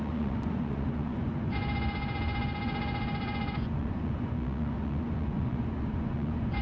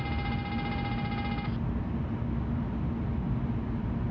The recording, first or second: second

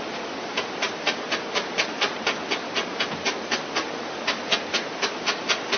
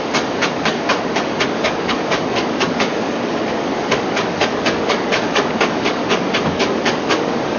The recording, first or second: first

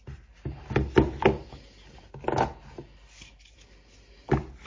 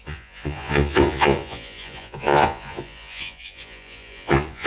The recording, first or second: first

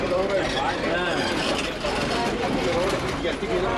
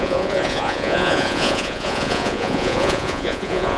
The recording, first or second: first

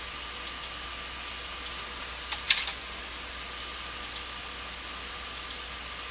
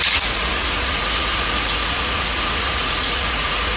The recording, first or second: first